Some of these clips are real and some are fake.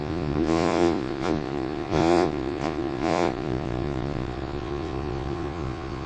fake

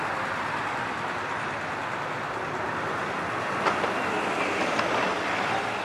real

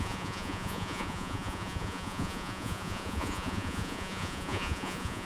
fake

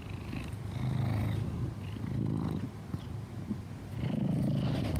real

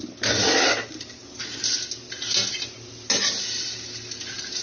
real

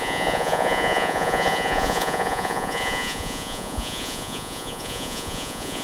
fake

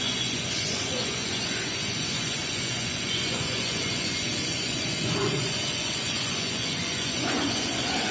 fake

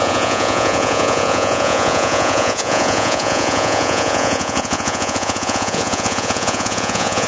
fake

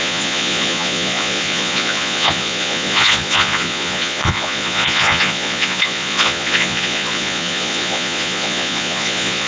fake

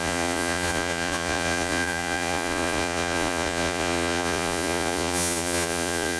fake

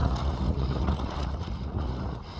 fake